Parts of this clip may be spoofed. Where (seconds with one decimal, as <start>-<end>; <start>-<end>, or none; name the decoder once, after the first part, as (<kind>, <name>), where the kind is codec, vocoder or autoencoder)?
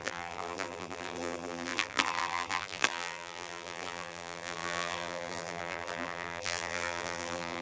0.0-7.6 (vocoder, BigVGAN v2)